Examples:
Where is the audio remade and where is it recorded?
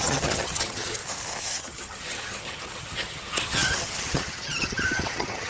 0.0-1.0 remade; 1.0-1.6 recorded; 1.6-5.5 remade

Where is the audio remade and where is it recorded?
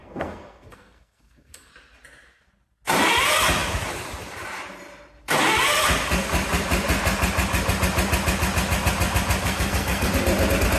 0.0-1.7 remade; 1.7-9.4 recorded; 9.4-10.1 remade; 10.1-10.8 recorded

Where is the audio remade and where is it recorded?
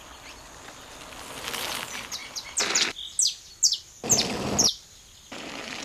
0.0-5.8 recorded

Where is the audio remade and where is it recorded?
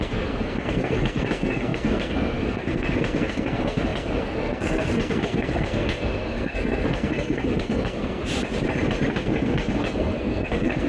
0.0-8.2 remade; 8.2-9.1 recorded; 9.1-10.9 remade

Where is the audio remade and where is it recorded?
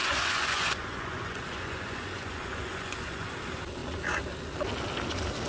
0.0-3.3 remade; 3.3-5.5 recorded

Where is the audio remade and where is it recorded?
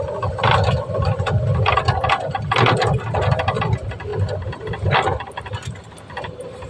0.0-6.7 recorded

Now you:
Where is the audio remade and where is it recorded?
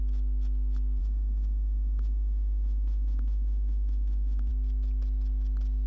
0.0-1.0 recorded; 1.0-4.5 remade; 4.5-5.9 recorded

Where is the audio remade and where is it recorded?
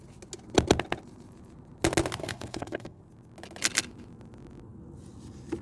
0.0-2.2 recorded; 2.2-3.0 remade; 3.0-5.6 recorded